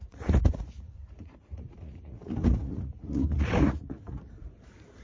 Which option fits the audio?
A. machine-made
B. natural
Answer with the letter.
A